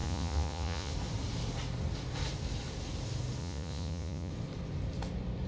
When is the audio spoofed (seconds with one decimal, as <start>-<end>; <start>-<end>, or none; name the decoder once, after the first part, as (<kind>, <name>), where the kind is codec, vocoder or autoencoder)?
0.0-0.9 (vocoder, Vocos); 3.4-4.3

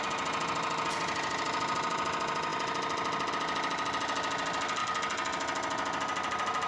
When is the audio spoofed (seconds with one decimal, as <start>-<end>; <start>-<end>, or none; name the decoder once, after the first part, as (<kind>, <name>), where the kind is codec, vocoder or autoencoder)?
none

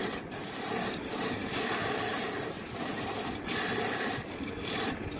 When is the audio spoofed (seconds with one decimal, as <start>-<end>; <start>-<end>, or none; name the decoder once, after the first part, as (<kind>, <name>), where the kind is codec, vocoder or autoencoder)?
none

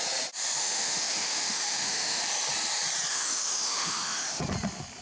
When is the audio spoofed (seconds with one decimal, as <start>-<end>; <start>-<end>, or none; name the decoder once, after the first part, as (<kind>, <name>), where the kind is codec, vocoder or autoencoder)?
0.6-2.2 (autoencoder, DAC-VAE); 3.1-4.4

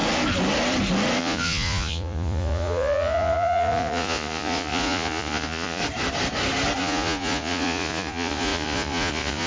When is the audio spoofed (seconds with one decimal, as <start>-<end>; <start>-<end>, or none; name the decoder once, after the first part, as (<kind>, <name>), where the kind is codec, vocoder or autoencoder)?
1.2-5.8 (vocoder, Vocos); 6.8-9.5